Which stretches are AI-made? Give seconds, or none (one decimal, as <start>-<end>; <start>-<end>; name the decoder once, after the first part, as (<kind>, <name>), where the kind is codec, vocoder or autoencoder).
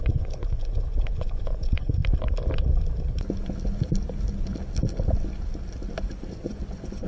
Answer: 0.0-2.0 (vocoder, Vocos); 6.3-7.1